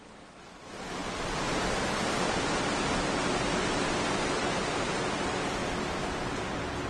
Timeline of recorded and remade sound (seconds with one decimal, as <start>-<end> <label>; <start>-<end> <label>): 0.0-6.9 recorded